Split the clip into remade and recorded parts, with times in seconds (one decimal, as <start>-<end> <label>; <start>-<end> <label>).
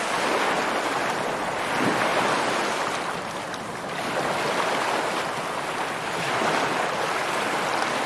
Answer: 0.0-8.1 recorded